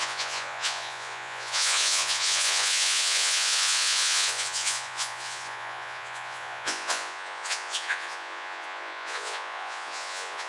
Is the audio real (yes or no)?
no